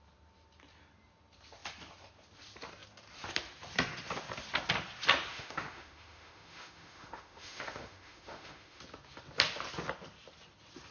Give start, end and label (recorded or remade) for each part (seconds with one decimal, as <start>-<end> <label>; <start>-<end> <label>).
0.0-5.3 recorded; 5.3-8.8 remade; 8.8-10.9 recorded